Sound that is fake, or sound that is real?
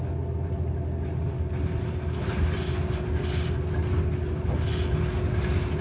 real